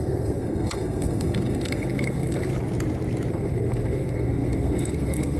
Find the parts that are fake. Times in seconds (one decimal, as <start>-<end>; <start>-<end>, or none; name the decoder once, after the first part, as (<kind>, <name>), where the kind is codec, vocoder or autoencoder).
0.0-2.5 (codec, SNAC); 3.3-5.4